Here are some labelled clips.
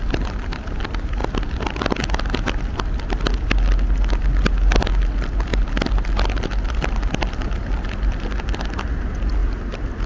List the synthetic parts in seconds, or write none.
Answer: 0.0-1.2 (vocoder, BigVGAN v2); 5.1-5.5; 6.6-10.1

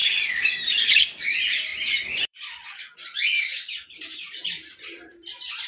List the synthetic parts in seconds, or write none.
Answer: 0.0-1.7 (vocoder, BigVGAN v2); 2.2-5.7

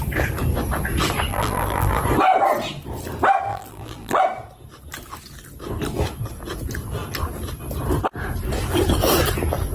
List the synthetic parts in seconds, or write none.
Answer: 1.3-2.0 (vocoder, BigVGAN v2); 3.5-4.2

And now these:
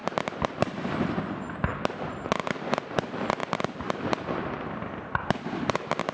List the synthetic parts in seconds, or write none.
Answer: 0.0-1.2 (vocoder, BigVGAN v2); 3.4-5.2

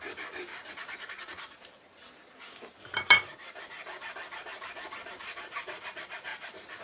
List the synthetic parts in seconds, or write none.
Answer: 0.5-1.7 (vocoder, BigVGAN v2); 6.3-6.8